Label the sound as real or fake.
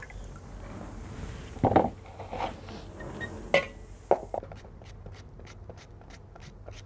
real